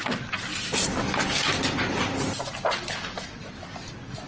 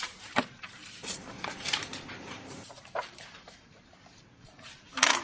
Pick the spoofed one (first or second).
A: second